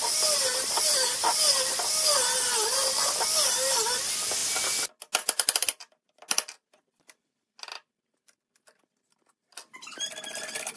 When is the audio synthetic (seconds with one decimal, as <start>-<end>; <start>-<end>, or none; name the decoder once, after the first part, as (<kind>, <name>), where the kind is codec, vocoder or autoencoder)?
none